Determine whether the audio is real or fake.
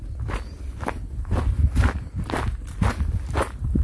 real